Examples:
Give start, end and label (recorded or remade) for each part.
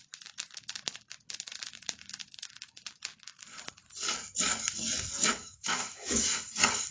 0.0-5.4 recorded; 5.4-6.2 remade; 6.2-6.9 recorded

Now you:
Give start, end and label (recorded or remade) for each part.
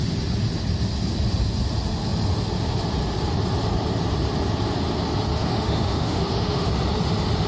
0.0-5.3 recorded; 5.3-6.7 remade; 6.7-7.5 recorded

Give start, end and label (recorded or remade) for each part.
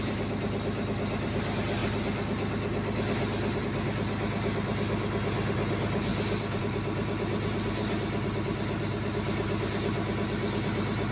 0.0-11.1 recorded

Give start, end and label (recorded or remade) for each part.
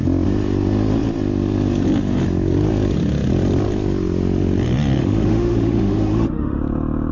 0.0-5.0 recorded; 5.0-6.6 remade; 6.6-7.1 recorded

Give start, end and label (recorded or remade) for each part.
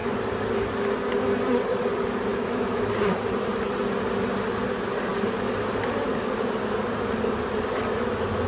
0.0-2.3 recorded; 2.3-2.9 remade; 2.9-8.5 recorded